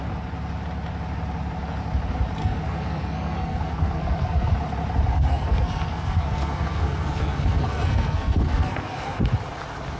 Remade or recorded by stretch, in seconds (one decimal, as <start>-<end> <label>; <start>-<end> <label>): 0.0-2.4 recorded; 2.4-4.5 remade; 4.5-5.1 recorded; 5.1-9.2 remade; 9.2-10.0 recorded